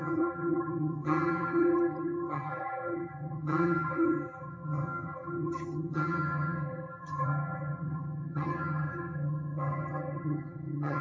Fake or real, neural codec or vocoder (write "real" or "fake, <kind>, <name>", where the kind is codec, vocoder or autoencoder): fake, vocoder, HiFi-GAN